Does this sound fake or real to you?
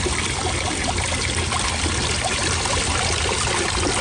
real